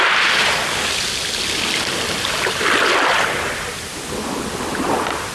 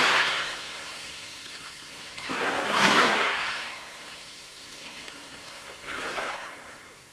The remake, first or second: second